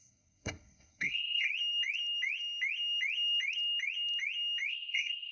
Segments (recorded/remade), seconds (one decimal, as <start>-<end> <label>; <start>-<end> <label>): 0.0-1.5 remade; 1.5-4.7 recorded; 4.7-5.3 remade